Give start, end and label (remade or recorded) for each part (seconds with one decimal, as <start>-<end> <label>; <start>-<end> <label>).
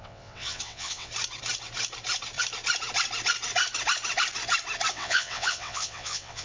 0.0-1.1 remade; 1.1-4.9 recorded; 4.9-6.4 remade